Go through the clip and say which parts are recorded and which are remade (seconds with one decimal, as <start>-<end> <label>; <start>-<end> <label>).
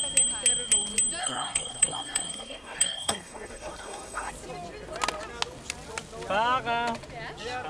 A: 0.0-1.2 recorded; 1.2-4.3 remade; 4.3-7.7 recorded